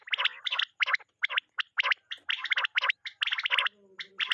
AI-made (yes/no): no